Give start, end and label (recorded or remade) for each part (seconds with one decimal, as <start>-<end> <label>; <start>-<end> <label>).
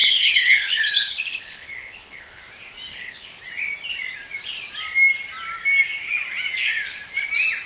0.0-2.4 remade; 2.4-2.9 recorded; 2.9-3.4 remade; 3.4-7.7 recorded